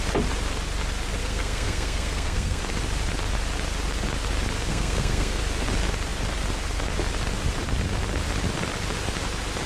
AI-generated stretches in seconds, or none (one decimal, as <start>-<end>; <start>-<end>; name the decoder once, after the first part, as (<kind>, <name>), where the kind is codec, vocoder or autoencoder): 1.2-2.6 (codec, SNAC); 4.7-5.4